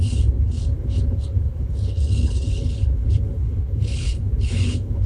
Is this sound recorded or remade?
remade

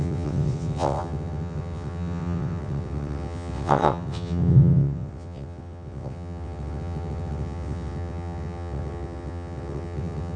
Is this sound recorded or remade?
remade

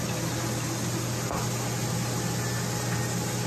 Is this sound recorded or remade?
recorded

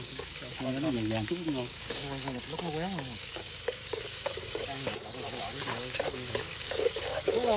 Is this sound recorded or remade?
remade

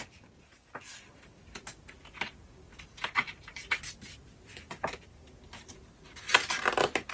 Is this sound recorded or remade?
recorded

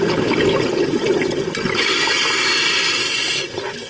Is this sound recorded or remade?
recorded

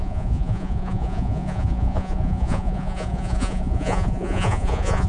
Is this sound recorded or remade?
remade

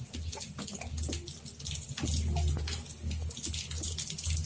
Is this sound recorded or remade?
recorded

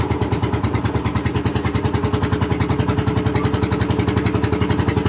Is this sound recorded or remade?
recorded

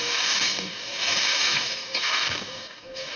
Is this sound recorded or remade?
remade